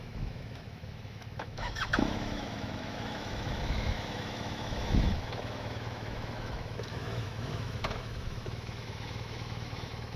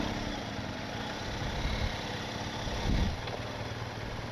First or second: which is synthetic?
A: first